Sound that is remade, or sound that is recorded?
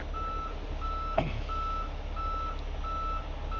recorded